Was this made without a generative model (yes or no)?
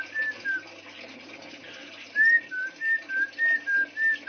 yes